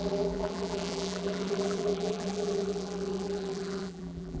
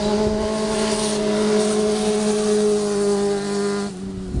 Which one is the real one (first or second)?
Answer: second